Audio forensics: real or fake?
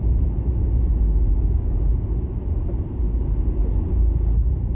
real